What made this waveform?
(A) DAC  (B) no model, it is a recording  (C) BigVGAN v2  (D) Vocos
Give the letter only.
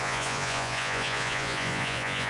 D